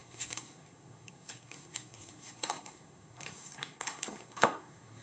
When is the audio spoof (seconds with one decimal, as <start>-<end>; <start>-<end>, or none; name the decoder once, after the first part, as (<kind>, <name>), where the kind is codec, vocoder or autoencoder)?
0.0-5.0 (codec, SNAC)